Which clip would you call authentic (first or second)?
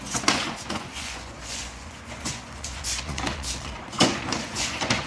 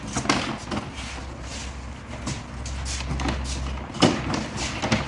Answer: second